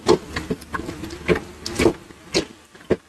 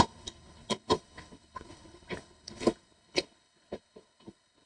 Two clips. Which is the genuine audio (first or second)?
first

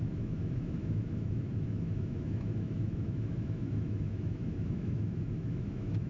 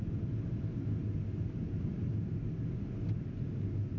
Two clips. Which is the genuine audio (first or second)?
second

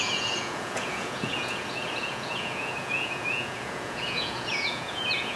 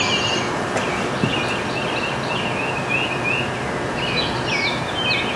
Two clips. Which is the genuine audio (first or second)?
second